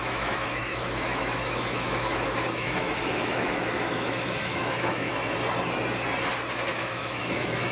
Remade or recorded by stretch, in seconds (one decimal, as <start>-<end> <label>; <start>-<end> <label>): 0.0-5.1 remade; 5.1-6.7 recorded; 6.7-7.7 remade